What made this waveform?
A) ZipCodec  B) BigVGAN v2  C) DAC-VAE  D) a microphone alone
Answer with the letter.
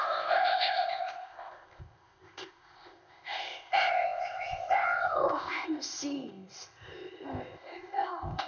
A